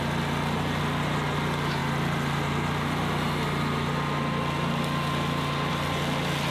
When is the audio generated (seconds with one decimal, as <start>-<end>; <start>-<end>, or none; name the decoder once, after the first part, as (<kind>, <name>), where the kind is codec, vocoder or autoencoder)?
none